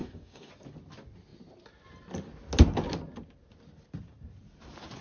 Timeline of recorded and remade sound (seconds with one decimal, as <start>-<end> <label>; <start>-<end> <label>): 0.0-0.5 remade; 0.5-5.0 recorded